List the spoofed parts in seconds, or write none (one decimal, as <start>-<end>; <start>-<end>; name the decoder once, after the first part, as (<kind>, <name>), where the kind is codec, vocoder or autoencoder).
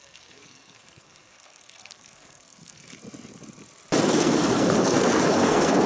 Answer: 0.0-2.9 (codec, SNAC); 4.0-5.9